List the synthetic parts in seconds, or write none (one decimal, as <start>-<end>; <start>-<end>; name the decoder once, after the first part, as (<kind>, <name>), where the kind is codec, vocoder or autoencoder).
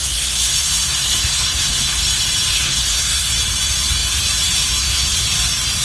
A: 0.0-2.0 (codec, SNAC); 2.5-3.3